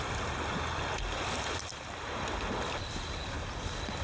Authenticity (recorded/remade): recorded